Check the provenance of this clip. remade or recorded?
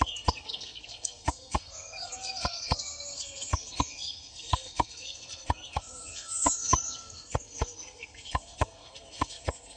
remade